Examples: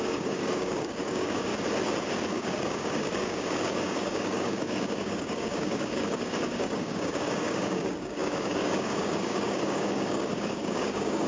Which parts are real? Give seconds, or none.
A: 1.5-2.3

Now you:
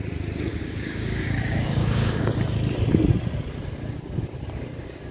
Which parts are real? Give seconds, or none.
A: 0.0-0.5; 2.3-5.1

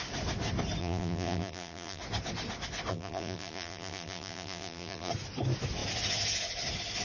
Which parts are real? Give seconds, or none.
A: 0.0-0.8; 2.0-2.9; 5.1-7.0

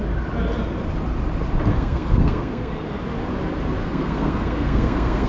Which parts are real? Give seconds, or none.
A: 0.0-1.7; 2.7-3.8

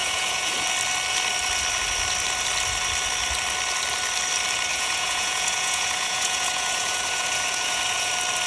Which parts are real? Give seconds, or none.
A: 0.5-4.7; 8.1-8.5

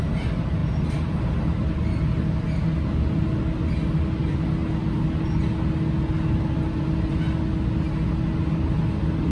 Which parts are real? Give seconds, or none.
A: 0.0-9.3